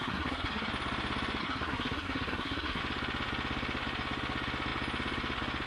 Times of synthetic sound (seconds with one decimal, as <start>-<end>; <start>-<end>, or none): 0.0-0.7; 1.4-2.8

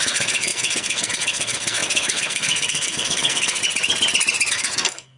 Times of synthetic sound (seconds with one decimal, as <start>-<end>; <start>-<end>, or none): 0.0-3.6; 4.5-5.2

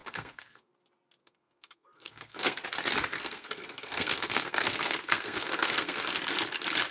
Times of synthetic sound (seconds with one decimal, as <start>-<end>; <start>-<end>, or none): 0.0-0.7; 1.2-2.6; 3.1-6.2

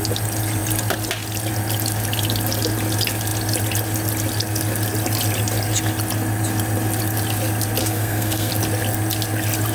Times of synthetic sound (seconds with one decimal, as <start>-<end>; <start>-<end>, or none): 7.8-8.5

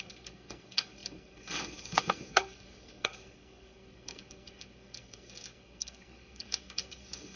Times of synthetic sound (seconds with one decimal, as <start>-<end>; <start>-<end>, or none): 0.0-7.4